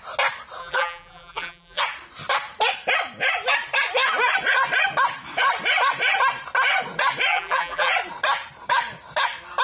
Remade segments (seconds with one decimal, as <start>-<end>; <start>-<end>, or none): 0.6-1.8; 7.3-7.9